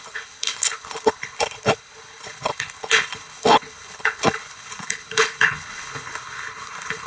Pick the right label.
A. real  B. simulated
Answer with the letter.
B